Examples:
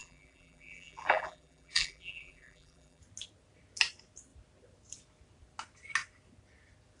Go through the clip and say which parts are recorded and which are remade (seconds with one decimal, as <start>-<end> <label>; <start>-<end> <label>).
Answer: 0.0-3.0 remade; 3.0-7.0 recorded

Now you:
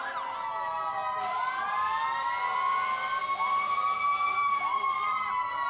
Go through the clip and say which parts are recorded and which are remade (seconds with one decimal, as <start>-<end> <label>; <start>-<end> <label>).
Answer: 0.0-4.1 recorded; 4.1-5.3 remade; 5.3-5.7 recorded

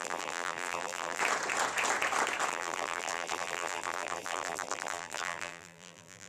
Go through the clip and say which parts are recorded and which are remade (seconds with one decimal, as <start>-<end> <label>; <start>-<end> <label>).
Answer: 0.0-1.2 remade; 1.2-2.5 recorded; 2.5-6.3 remade